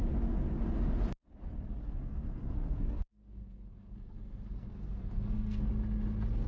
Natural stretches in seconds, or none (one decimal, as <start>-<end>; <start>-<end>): 0.0-1.8; 5.7-6.5

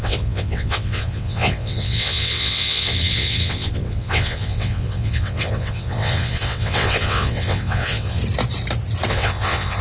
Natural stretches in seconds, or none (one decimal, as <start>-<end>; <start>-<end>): 8.2-9.1

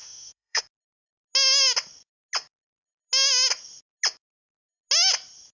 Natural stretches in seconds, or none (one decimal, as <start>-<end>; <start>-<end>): 0.6-5.6

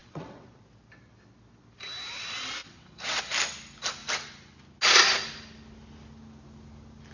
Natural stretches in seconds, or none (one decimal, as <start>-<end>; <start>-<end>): 0.6-2.6; 3.2-7.1

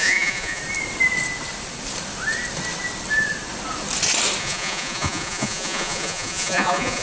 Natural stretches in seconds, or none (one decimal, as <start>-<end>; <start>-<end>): 0.6-4.4